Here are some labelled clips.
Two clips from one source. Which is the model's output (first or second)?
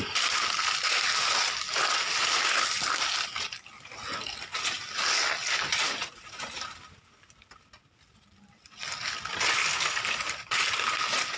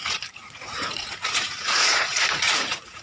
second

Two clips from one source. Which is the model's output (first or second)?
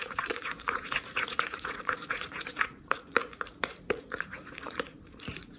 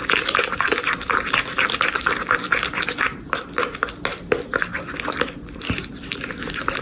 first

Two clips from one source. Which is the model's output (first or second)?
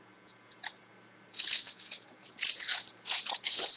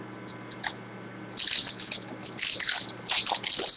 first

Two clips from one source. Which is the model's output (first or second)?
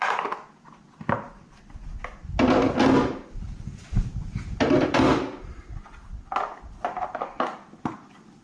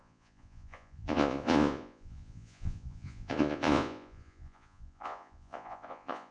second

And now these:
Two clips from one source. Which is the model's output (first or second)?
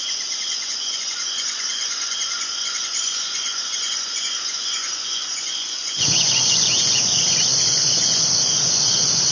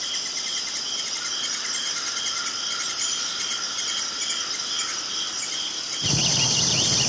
first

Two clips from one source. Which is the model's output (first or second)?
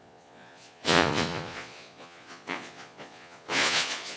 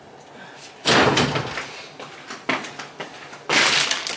first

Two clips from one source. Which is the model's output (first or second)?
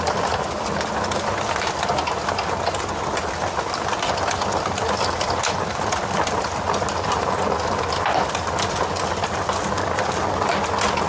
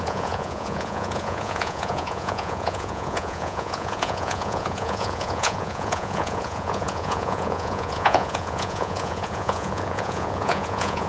second